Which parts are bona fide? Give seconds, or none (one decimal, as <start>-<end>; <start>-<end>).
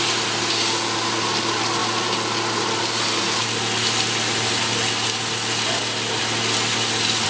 0.0-7.3